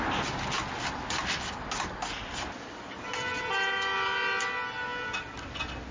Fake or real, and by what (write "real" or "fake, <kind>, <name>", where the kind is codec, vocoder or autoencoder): real